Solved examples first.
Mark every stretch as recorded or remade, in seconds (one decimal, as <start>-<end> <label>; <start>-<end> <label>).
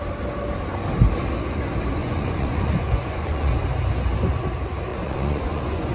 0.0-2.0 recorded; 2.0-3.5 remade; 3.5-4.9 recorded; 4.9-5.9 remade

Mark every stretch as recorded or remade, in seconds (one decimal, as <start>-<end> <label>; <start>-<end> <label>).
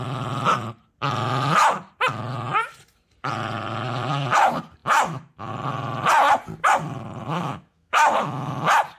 0.0-4.8 recorded; 4.8-5.5 remade; 5.5-7.3 recorded; 7.3-8.5 remade; 8.5-9.0 recorded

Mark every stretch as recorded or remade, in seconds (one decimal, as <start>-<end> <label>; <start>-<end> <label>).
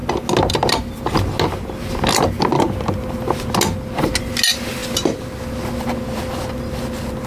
0.0-7.3 recorded